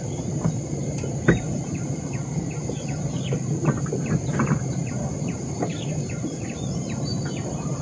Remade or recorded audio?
remade